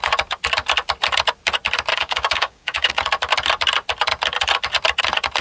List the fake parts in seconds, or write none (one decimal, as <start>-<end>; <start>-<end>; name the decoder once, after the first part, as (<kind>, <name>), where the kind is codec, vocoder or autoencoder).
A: 1.9-2.9 (codec, DAC)